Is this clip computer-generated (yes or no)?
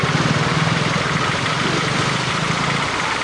no